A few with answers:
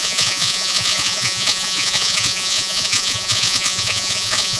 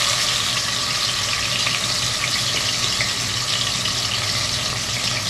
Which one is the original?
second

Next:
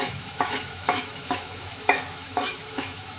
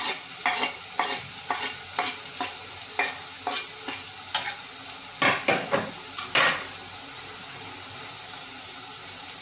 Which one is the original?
second